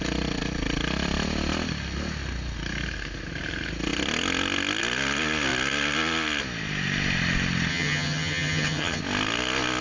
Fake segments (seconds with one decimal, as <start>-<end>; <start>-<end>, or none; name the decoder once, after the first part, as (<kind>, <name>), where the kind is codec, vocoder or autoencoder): 7.7-9.0 (vocoder, HiFi-GAN)